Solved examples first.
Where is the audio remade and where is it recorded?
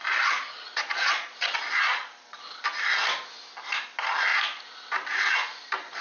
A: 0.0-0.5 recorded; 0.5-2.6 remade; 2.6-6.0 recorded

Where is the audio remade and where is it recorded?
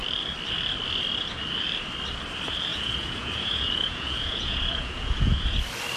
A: 0.0-2.7 recorded; 2.7-5.6 remade; 5.6-6.0 recorded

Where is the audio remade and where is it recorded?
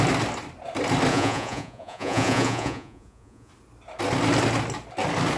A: 0.0-1.1 recorded; 1.1-3.5 remade; 3.5-5.4 recorded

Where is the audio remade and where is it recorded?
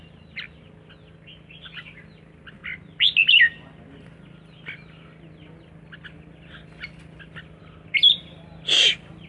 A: 0.0-9.3 recorded